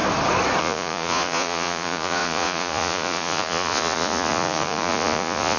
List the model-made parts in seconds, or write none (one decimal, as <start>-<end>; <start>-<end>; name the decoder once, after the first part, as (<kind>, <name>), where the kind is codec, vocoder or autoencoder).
0.6-5.6 (vocoder, Vocos)